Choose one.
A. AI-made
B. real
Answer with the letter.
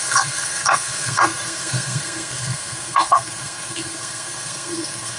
A